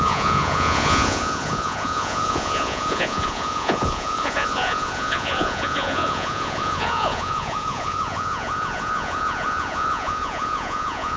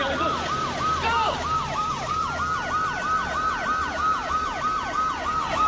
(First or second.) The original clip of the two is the second